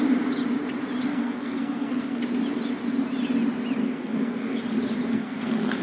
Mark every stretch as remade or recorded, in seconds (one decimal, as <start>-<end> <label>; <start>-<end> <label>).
0.0-1.1 recorded; 1.1-2.2 remade; 2.2-3.8 recorded; 3.8-4.6 remade; 4.6-5.1 recorded; 5.1-5.8 remade